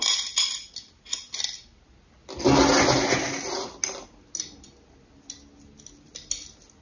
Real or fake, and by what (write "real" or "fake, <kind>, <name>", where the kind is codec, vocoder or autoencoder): real